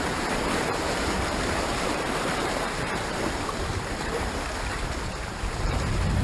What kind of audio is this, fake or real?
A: fake